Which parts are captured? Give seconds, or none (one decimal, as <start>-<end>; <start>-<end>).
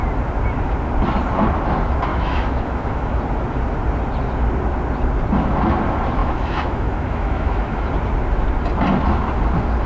0.0-2.1; 3.2-6.2; 7.9-9.9